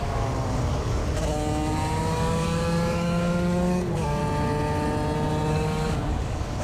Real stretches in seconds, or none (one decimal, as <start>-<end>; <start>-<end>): 1.0-2.0; 4.2-5.5